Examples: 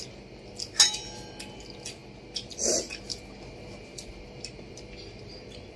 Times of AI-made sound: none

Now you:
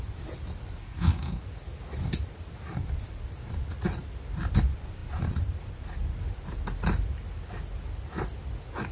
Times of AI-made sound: 0.8-1.4 (codec, SNAC)

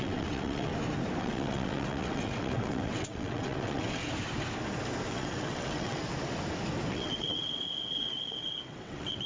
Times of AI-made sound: 0.0-0.7 (vocoder, WaveNeXt); 1.2-4.0; 5.1-6.0; 6.9-9.3

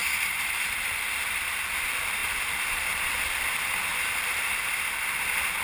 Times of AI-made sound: 0.0-0.7 (vocoder, BigVGAN v2); 2.2-3.0; 3.9-4.6

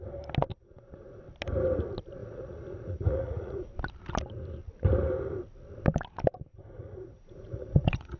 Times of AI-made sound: 0.5-1.2 (vocoder, Vocos); 2.2-3.7; 6.5-8.2

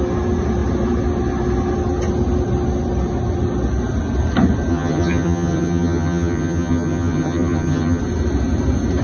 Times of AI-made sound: 4.7-8.0 (vocoder, HiFi-GAN)